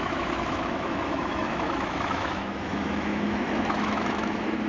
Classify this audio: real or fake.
fake